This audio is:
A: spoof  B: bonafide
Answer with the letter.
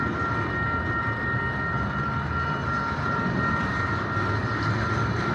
B